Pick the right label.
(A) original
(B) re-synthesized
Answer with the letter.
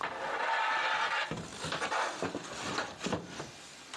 A